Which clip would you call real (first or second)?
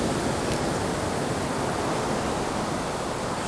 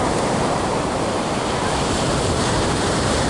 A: first